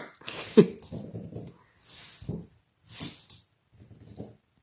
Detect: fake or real real